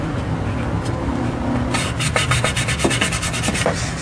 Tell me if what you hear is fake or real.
real